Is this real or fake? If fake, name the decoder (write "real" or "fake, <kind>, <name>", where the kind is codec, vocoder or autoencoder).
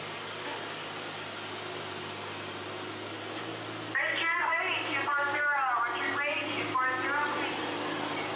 real